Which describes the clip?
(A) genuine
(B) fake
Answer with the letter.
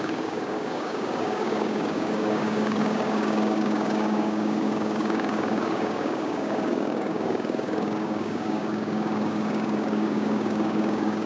B